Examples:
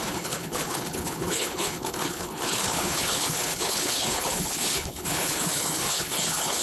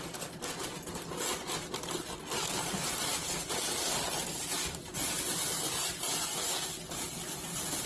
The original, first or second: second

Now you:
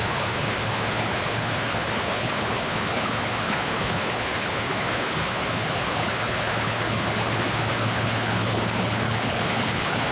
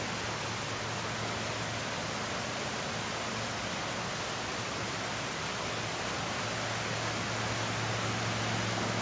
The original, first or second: second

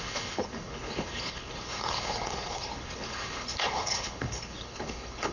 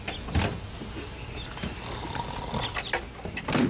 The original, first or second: second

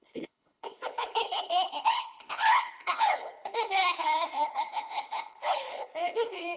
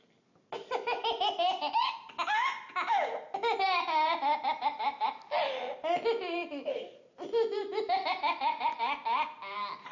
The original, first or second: second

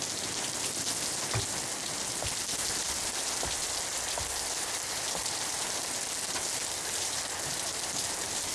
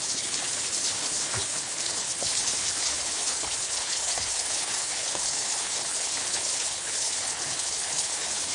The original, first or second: first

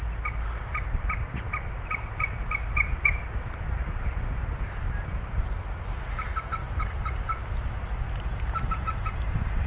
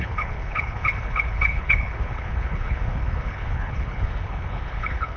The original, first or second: first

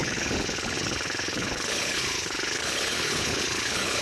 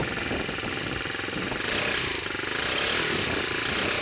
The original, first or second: second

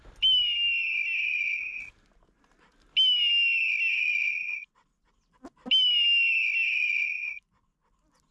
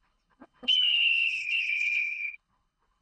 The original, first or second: first